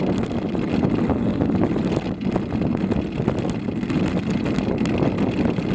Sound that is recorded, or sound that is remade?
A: recorded